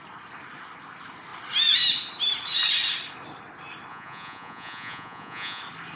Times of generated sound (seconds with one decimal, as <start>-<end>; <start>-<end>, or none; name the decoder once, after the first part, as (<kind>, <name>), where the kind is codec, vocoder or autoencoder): 3.9-5.6 (vocoder, Vocos)